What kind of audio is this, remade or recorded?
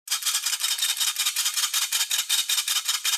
recorded